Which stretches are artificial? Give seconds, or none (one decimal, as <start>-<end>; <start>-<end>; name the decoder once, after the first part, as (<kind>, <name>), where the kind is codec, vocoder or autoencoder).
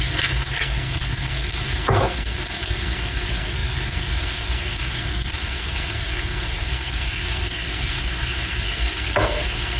0.0-9.8 (codec, SNAC)